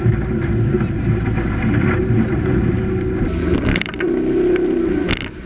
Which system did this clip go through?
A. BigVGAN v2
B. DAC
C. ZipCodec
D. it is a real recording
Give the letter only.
D